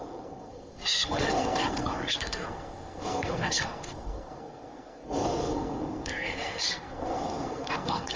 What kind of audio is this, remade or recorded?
remade